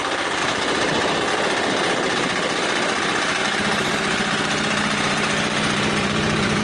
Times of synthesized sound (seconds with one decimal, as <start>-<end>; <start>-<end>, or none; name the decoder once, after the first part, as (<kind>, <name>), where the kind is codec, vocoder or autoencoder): 0.4-1.3 (vocoder, BigVGAN v2); 3.4-6.6